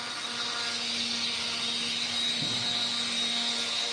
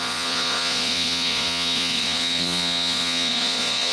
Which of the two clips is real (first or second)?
first